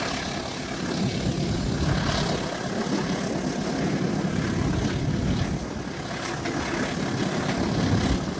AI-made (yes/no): no